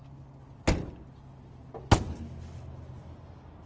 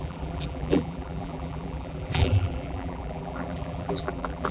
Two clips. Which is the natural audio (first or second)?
first